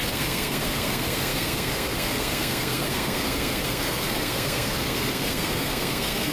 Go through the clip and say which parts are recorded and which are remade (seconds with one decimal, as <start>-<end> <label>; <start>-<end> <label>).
0.0-6.3 remade